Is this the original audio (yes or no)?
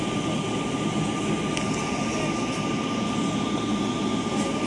yes